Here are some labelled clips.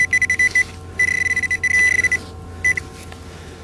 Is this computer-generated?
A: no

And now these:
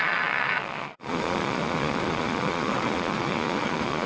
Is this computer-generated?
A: yes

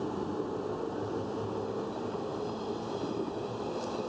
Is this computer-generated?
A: no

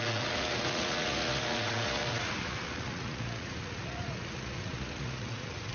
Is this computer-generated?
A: yes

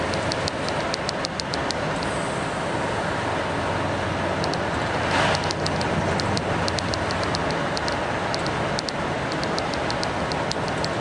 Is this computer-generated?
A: no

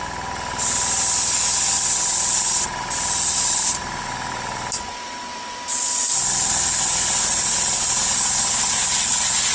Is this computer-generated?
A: no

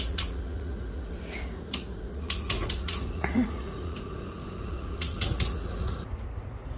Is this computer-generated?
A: yes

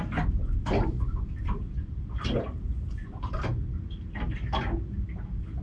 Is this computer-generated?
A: no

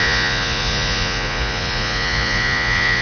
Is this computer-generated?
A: yes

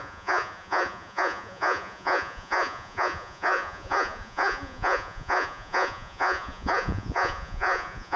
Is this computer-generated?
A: yes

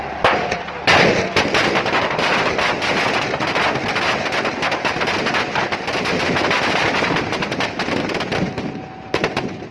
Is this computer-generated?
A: no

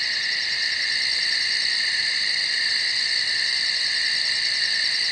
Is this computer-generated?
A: no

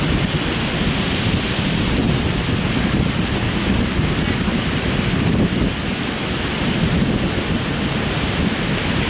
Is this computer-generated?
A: no